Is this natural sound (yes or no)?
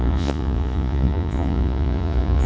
no